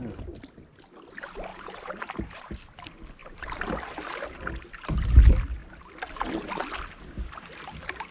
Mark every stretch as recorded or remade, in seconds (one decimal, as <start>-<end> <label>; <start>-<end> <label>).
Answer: 0.0-1.5 recorded; 1.5-2.6 remade; 2.6-3.2 recorded; 3.2-3.9 remade; 3.9-8.1 recorded